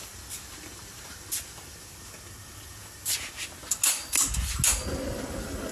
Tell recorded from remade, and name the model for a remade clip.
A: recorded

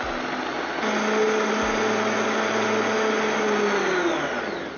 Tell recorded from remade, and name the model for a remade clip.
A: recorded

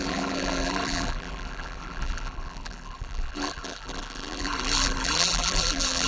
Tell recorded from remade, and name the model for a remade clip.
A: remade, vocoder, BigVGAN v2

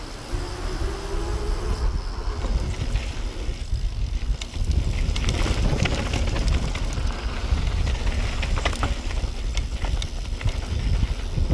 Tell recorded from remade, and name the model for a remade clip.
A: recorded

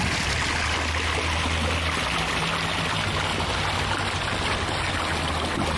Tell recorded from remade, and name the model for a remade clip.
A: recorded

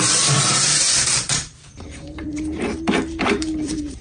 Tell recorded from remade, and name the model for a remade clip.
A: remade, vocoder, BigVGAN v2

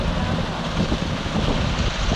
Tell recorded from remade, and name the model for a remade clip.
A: recorded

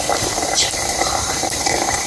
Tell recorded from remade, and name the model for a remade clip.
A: remade, vocoder, BigVGAN v2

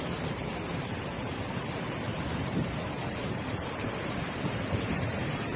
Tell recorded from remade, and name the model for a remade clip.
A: remade, vocoder, BigVGAN v2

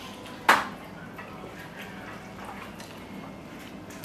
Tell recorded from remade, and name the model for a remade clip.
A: recorded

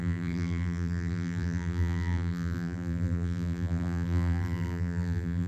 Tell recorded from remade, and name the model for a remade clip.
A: remade, vocoder, BigVGAN v2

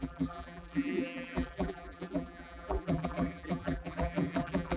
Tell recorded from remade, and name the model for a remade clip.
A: remade, vocoder, BigVGAN v2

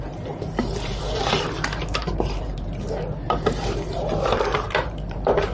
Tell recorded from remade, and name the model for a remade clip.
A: remade, vocoder, BigVGAN v2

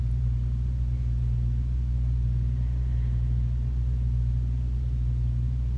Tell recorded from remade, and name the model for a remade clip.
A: remade, vocoder, BigVGAN v2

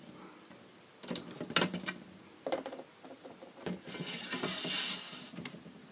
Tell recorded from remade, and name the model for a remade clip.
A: recorded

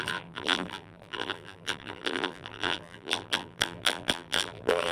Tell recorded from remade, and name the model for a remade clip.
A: remade, vocoder, BigVGAN v2